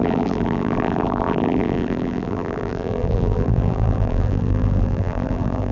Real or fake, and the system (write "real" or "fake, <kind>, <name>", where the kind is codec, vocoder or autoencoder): fake, vocoder, BigVGAN v2